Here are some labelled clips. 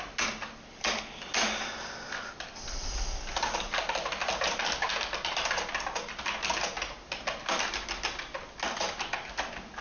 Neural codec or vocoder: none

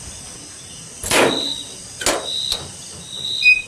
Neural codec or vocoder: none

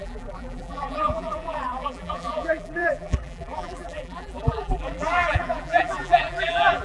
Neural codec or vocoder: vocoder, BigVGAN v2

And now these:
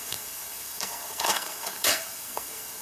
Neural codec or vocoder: codec, SNAC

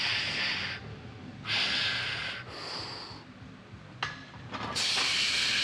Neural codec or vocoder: none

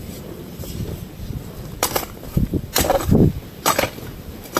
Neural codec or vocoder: vocoder, BigVGAN v2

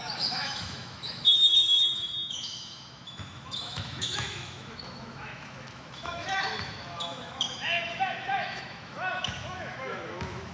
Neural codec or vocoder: autoencoder, DAC-VAE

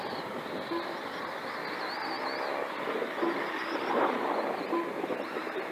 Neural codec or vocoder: none